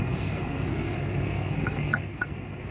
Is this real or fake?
fake